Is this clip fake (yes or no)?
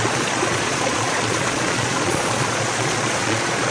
yes